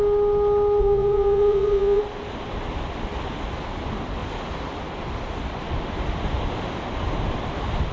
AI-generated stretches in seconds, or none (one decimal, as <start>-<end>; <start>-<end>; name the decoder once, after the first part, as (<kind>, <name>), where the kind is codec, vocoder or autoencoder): 0.8-2.0 (vocoder, Vocos)